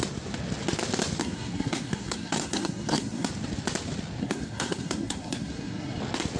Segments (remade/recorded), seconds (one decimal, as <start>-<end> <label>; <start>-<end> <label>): 0.0-1.2 recorded; 1.2-3.3 remade; 3.3-4.2 recorded; 4.2-6.0 remade; 6.0-6.4 recorded